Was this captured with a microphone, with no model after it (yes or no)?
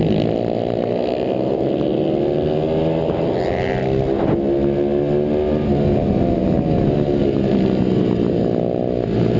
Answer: yes